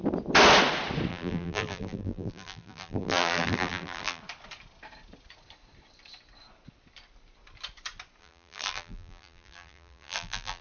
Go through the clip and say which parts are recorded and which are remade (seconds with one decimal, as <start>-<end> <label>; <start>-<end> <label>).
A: 0.0-1.1 recorded; 1.1-4.2 remade; 4.2-8.2 recorded; 8.2-10.6 remade